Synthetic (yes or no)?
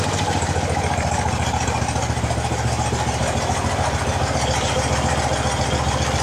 no